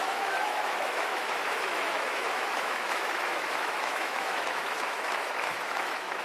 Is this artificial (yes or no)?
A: yes